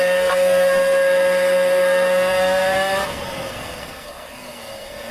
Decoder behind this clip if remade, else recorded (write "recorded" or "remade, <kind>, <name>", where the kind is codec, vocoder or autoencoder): remade, codec, SNAC